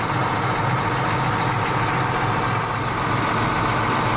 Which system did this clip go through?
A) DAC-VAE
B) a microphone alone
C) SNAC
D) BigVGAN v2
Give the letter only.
B